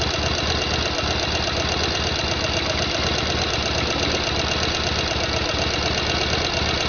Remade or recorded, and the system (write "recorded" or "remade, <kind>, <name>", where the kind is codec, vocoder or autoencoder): recorded